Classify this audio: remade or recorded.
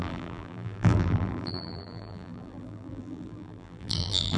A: remade